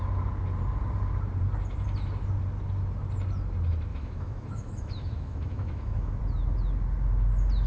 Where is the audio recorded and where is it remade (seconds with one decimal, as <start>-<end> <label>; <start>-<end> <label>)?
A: 0.0-3.9 recorded; 3.9-6.2 remade; 6.2-7.7 recorded